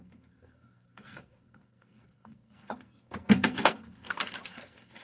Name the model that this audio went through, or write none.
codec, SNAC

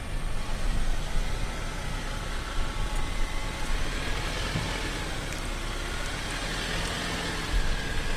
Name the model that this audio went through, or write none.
none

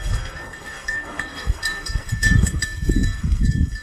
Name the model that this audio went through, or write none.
codec, SNAC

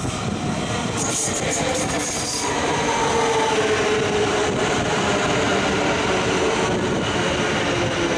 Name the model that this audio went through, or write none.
none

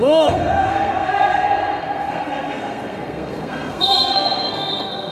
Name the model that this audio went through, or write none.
codec, SNAC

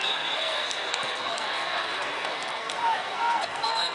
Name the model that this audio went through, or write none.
codec, SNAC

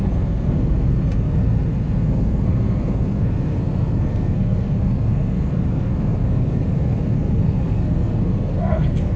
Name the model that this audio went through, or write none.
codec, SNAC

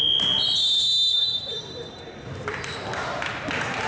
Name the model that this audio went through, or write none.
none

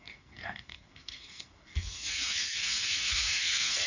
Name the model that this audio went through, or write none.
codec, SNAC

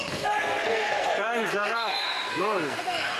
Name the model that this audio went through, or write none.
codec, SNAC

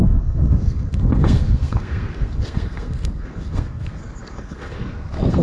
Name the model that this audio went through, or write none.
codec, SNAC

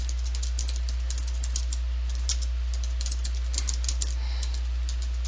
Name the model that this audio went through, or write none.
none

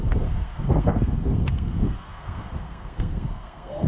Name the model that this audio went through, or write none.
codec, SNAC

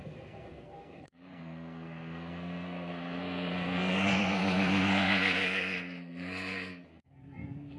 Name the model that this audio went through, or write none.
codec, SNAC